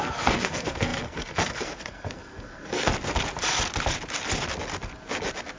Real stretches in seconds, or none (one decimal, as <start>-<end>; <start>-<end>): 2.9-5.6